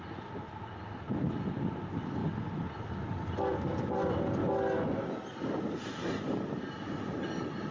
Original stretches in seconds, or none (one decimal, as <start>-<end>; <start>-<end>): 4.4-5.0